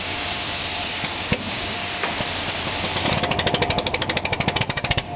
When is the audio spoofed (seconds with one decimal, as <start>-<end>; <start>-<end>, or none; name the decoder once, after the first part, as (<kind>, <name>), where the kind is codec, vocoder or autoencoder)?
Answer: 0.0-0.6 (codec, DAC); 1.4-1.8; 4.6-5.2